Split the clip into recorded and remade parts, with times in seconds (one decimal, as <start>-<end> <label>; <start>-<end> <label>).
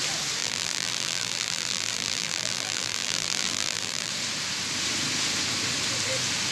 0.0-0.4 recorded; 0.4-4.1 remade; 4.1-6.5 recorded